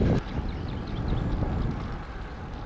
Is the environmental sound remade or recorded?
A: recorded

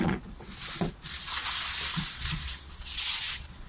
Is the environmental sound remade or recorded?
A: remade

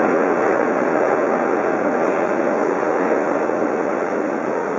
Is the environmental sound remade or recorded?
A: remade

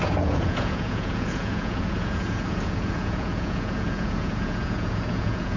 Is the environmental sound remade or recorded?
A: remade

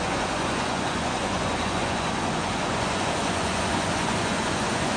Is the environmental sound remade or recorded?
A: remade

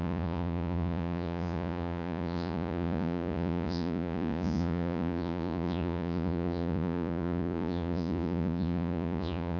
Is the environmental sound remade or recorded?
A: remade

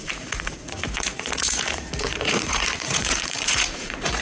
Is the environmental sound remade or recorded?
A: remade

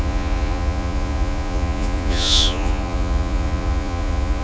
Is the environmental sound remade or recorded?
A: remade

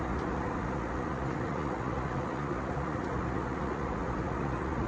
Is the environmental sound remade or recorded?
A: remade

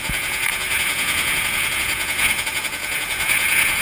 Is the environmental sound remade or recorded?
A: remade